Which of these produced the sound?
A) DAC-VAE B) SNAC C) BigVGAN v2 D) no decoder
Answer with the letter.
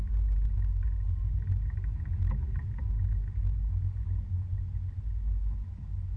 D